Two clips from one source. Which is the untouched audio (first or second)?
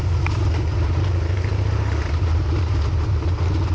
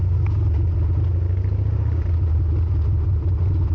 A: second